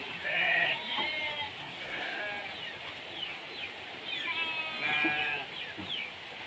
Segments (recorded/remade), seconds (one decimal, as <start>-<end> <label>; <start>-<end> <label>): 0.0-1.6 recorded; 1.6-2.2 remade; 2.2-6.5 recorded